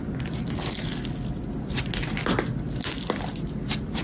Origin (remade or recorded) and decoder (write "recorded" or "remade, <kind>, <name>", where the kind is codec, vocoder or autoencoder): recorded